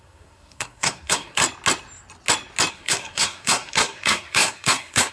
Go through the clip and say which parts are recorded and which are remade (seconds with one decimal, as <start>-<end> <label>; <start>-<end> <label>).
0.0-1.4 remade; 1.4-2.7 recorded; 2.7-5.1 remade